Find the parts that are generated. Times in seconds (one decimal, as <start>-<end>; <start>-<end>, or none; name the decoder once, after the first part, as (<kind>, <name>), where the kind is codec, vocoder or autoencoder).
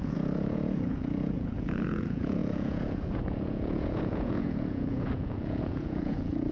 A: 0.0-6.5 (vocoder, Vocos)